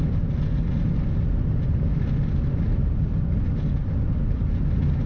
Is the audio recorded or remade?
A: recorded